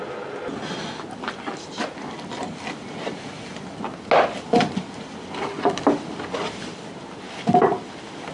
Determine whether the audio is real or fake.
real